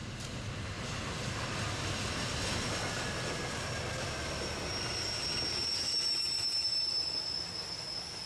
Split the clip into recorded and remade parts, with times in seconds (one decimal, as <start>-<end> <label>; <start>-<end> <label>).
0.0-8.3 recorded